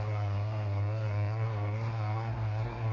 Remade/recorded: remade